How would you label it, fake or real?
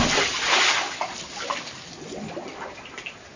real